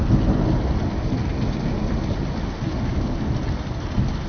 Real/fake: real